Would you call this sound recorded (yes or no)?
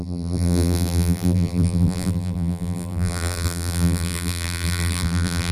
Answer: no